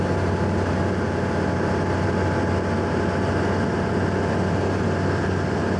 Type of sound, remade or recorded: recorded